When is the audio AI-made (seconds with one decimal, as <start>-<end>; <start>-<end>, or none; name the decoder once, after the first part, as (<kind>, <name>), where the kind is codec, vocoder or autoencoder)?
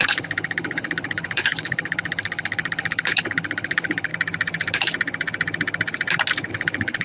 0.0-4.1 (codec, HILCodec); 6.5-7.0